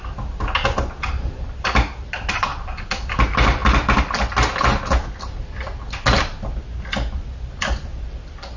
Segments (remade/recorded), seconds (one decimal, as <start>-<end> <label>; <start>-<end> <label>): 0.0-8.6 recorded